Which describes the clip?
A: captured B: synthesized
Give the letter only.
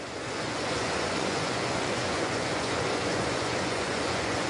B